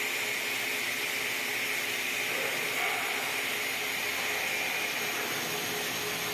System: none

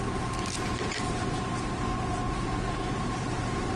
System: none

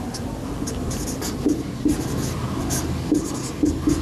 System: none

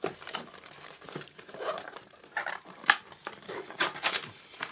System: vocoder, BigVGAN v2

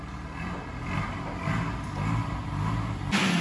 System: none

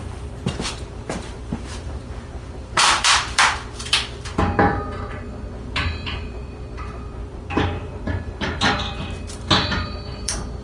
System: vocoder, BigVGAN v2